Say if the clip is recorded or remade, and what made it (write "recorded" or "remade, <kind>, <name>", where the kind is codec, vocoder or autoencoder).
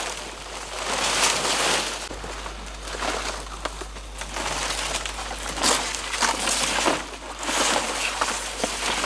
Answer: recorded